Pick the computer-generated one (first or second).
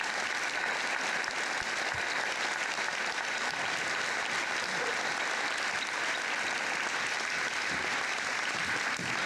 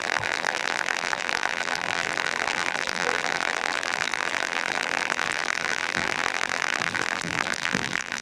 second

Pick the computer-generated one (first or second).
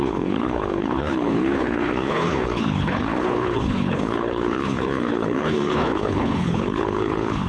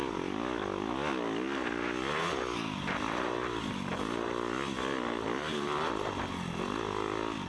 first